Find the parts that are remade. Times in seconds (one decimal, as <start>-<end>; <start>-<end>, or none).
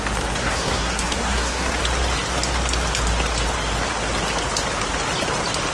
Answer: 0.4-1.7